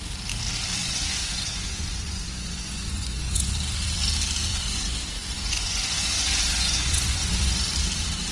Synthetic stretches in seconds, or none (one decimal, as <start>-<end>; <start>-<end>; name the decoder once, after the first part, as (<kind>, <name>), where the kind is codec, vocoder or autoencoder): 0.8-3.5 (vocoder, Vocos); 4.5-7.6